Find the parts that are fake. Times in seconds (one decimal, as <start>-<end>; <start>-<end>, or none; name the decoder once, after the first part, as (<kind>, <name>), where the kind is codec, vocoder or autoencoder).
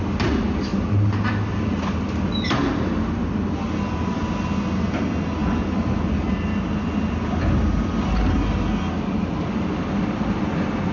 none